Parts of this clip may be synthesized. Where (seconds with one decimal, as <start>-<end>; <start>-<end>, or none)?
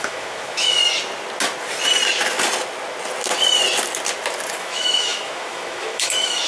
0.0-0.8; 4.6-6.5